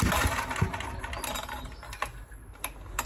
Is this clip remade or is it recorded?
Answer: recorded